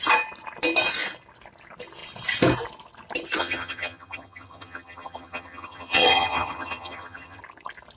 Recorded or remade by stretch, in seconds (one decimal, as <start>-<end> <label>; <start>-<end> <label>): 0.0-3.4 recorded; 3.4-7.4 remade; 7.4-8.0 recorded